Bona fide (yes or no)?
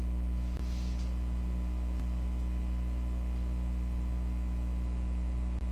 yes